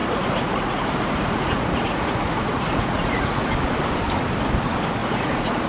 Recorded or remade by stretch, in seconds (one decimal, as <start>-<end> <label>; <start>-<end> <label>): 0.0-3.4 remade; 3.4-5.0 recorded; 5.0-5.7 remade

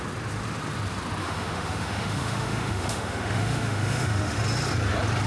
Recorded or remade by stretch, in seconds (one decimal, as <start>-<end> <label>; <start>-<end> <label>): 0.0-1.2 recorded; 1.2-4.4 remade; 4.4-5.3 recorded